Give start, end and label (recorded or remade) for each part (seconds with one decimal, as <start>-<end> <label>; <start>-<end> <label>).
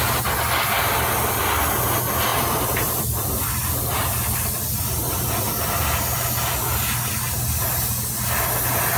0.0-2.3 recorded; 2.3-5.3 remade; 5.3-9.0 recorded